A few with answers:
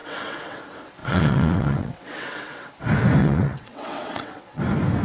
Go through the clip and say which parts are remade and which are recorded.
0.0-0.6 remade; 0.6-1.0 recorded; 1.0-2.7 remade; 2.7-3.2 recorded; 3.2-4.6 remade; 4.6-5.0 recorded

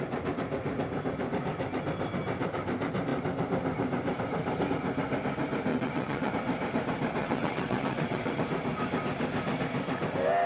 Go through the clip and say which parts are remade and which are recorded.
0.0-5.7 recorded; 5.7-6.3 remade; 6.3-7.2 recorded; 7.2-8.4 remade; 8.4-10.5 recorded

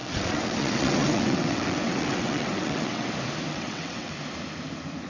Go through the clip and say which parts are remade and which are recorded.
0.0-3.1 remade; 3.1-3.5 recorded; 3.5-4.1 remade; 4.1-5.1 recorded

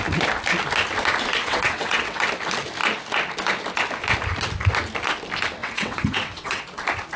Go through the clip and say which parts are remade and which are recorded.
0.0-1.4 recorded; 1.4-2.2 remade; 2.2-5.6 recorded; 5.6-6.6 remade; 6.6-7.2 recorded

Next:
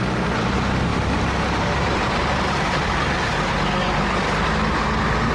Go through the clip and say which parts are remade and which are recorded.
0.0-5.3 recorded

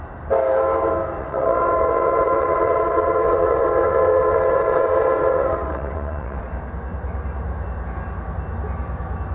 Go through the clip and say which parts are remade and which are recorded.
0.0-1.2 recorded; 1.2-6.4 remade; 6.4-9.3 recorded

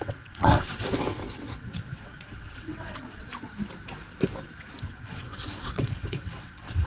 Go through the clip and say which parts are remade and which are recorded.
0.0-3.3 remade; 3.3-4.8 recorded; 4.8-6.9 remade